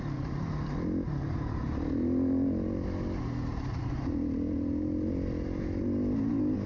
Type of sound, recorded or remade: recorded